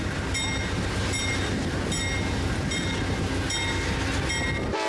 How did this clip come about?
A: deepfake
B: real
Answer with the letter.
B